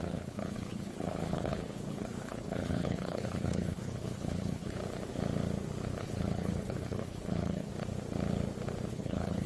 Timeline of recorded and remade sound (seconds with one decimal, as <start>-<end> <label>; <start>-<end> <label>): 0.0-4.8 remade; 4.8-6.0 recorded; 6.0-7.7 remade; 7.7-8.9 recorded; 8.9-9.5 remade